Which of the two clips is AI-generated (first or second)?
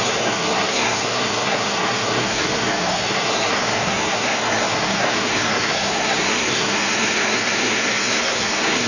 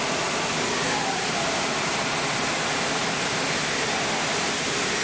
first